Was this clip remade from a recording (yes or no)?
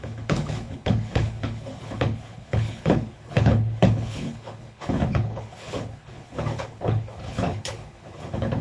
yes